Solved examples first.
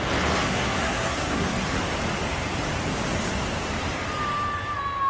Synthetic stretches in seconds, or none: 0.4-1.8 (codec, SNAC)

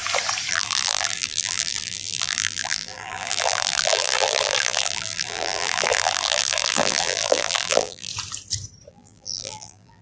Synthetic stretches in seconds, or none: 0.5-8.1 (vocoder, BigVGAN v2); 8.9-10.0

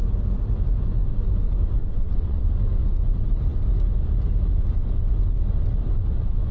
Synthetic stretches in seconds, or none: 1.8-2.4 (vocoder, WaveNeXt)